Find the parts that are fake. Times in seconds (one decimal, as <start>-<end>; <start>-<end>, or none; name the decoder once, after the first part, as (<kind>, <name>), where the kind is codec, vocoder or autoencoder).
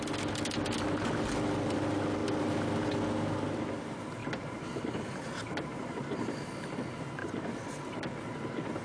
4.2-6.2 (vocoder, BigVGAN v2); 7.2-7.8